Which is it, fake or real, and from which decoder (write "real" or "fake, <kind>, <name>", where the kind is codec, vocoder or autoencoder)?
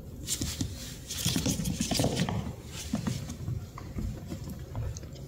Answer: real